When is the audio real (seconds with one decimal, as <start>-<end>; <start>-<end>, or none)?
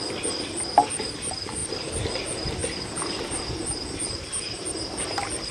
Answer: 0.0-5.5